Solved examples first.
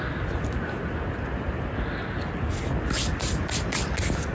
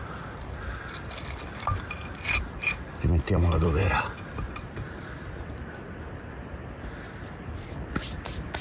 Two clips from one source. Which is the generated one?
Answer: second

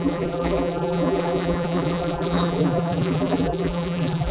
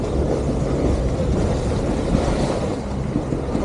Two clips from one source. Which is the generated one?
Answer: first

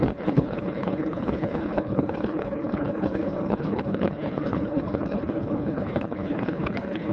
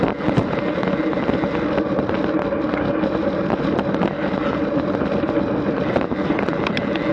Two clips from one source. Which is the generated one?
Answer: first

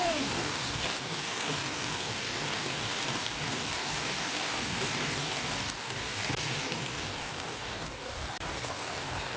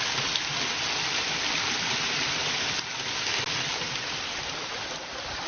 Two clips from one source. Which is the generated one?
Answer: first